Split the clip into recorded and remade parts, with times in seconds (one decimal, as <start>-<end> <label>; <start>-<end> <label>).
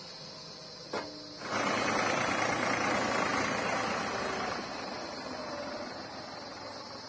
0.0-7.1 recorded